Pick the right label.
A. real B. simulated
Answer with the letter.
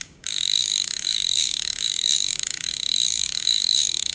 B